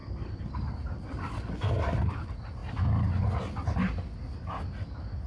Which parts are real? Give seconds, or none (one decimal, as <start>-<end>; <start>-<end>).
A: 2.1-5.3